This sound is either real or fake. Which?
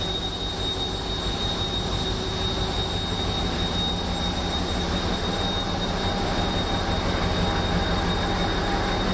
real